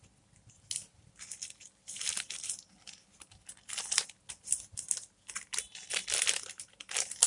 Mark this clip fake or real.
real